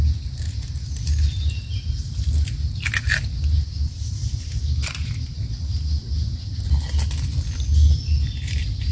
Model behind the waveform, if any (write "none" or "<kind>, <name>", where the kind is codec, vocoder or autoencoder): none